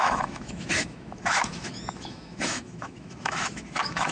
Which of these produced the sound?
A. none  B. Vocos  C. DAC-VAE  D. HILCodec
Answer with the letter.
C